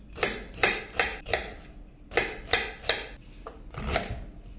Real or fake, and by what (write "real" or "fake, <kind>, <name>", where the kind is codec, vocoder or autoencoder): real